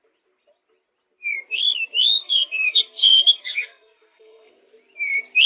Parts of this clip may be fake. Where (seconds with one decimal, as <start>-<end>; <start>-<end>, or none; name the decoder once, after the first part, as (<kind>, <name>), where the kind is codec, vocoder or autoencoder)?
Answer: 2.2-4.5 (codec, SNAC)